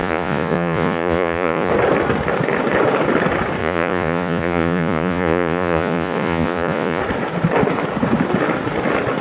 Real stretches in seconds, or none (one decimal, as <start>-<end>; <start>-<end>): 1.7-3.6; 7.0-9.2